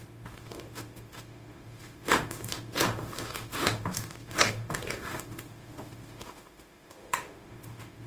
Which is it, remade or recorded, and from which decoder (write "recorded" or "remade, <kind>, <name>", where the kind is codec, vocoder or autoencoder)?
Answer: remade, autoencoder, DAC-VAE